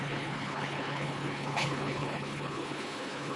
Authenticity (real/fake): fake